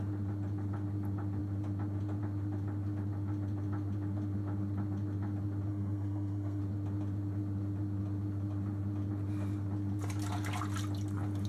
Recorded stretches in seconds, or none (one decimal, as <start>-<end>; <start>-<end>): 0.0-5.7; 6.6-11.5